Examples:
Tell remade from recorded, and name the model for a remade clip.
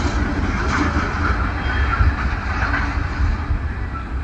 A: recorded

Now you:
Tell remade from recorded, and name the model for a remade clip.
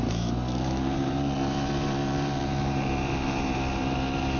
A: remade, vocoder, BigVGAN v2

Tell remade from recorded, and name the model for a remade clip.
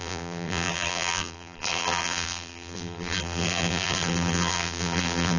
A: remade, vocoder, BigVGAN v2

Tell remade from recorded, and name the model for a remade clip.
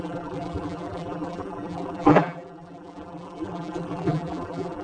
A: remade, vocoder, BigVGAN v2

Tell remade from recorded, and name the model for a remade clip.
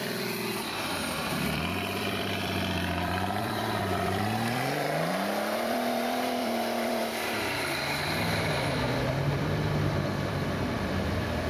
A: remade, vocoder, BigVGAN v2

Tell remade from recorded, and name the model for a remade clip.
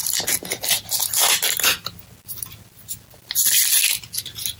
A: recorded